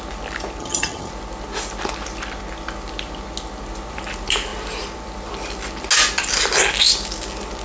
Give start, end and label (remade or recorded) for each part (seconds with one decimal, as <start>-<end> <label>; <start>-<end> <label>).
0.0-0.6 recorded; 0.6-1.1 remade; 1.1-7.6 recorded